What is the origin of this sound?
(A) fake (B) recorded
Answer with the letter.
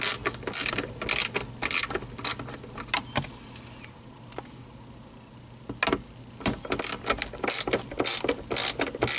B